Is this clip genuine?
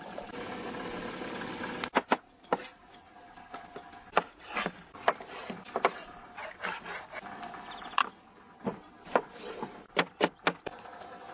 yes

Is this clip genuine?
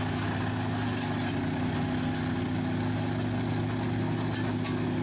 yes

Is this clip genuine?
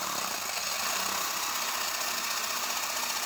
yes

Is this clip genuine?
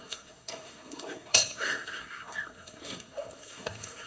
no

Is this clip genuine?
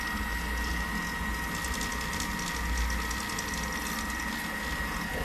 yes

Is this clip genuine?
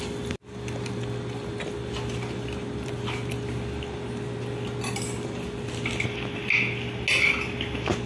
yes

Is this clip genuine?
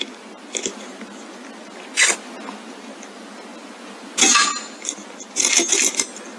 yes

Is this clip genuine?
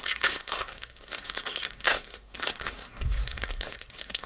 no